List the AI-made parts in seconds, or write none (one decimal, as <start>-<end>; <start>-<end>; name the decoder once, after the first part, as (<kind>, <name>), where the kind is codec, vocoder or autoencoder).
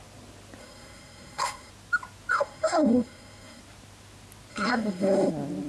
0.6-1.7 (codec, SNAC); 2.3-3.6; 4.5-5.3